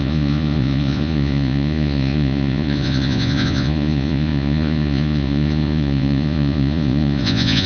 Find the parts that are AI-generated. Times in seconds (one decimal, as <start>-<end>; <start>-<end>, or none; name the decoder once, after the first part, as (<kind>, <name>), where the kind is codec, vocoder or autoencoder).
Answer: 0.0-7.7 (vocoder, Vocos)